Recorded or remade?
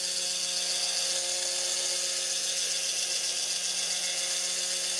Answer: recorded